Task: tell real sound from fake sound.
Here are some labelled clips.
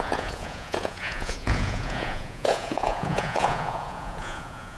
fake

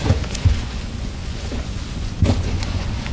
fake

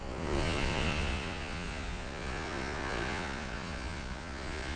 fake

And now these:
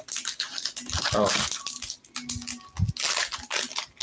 real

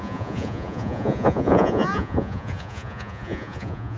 fake